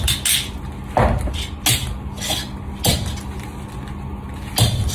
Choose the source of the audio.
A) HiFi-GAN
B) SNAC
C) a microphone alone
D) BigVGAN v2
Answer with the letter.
C